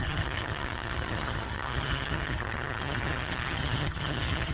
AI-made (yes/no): yes